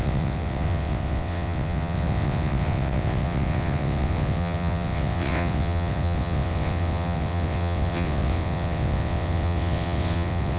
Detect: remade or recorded remade